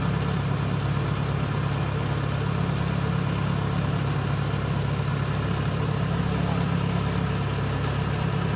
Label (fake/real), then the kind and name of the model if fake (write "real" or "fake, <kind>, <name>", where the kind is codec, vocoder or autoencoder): real